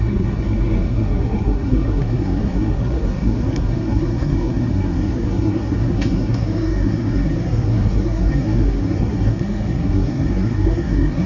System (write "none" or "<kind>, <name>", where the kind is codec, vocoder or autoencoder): codec, SNAC